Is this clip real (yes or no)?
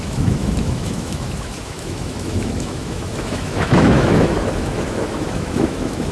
no